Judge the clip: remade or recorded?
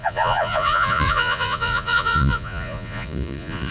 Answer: remade